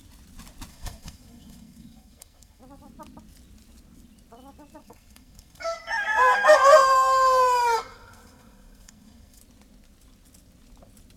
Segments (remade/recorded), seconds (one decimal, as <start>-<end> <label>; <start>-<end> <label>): 0.0-0.7 recorded; 0.7-2.6 remade; 2.6-4.8 recorded; 4.8-9.4 remade; 9.4-11.2 recorded